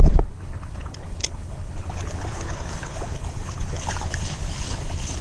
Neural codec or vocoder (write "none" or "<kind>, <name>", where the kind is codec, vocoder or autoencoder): codec, HILCodec